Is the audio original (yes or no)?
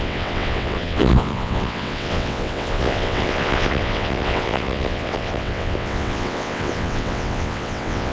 no